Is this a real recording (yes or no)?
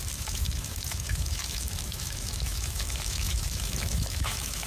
no